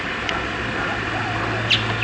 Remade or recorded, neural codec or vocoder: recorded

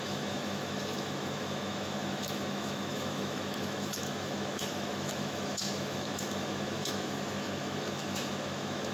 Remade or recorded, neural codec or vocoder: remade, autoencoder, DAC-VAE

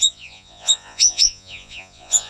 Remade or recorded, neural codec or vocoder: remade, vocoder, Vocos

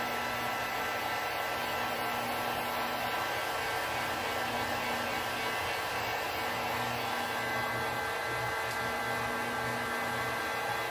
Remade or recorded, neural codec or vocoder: recorded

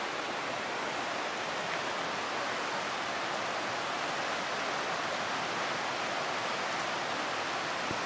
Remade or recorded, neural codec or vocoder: recorded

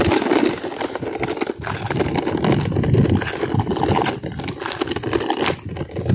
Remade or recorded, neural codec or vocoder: recorded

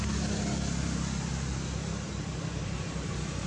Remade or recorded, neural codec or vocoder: recorded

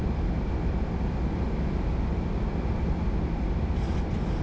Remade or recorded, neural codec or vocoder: recorded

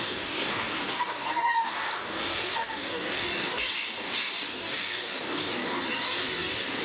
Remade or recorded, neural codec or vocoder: remade, codec, DAC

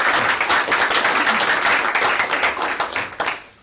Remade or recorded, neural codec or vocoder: recorded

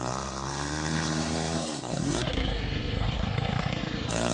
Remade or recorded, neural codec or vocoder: remade, codec, SNAC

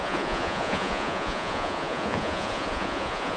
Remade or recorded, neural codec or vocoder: remade, vocoder, Vocos